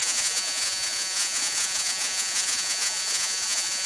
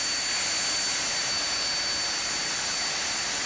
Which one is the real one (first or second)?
second